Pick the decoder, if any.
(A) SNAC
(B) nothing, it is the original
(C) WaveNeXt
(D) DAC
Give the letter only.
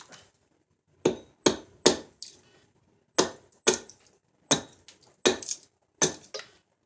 B